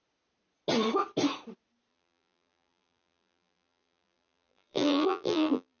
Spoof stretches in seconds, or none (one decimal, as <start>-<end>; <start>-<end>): 1.9-5.8